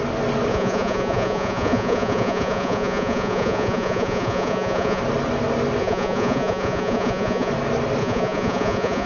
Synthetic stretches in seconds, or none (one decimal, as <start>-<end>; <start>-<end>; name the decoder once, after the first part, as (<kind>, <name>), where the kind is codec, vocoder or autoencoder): 0.5-5.0 (vocoder, Vocos); 5.8-7.5; 8.0-9.1